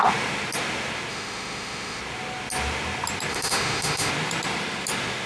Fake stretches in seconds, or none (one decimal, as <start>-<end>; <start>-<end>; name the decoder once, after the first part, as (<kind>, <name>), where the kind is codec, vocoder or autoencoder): 1.1-2.0 (autoencoder, DAC-VAE); 3.3-4.1